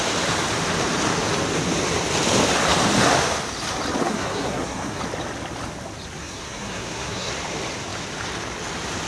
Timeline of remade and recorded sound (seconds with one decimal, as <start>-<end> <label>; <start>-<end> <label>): 0.0-4.0 recorded; 4.0-5.0 remade; 5.0-6.2 recorded; 6.2-7.3 remade; 7.3-9.1 recorded